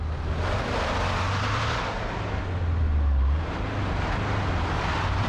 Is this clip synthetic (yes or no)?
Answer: no